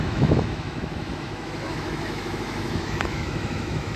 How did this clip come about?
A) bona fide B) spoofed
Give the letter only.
B